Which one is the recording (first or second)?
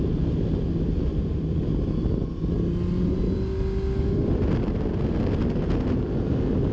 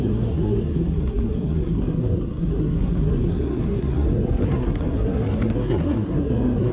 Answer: first